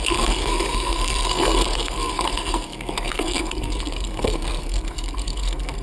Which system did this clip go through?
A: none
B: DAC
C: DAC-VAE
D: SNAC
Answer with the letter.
D